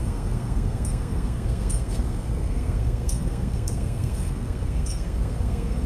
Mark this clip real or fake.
fake